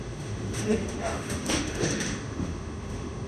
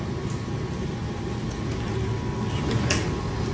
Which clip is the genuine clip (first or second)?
second